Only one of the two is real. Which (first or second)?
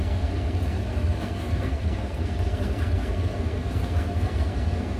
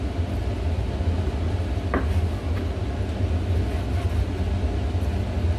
second